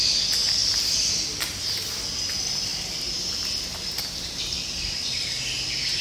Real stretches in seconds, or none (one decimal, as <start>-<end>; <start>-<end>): 0.0-6.0